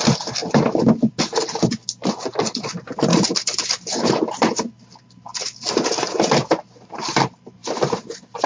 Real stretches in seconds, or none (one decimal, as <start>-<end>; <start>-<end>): 0.0-3.1; 4.1-7.6